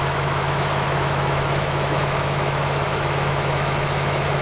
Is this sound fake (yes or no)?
yes